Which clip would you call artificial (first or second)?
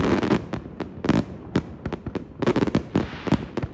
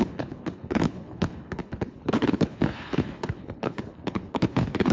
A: second